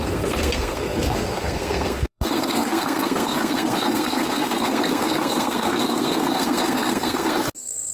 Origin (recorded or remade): remade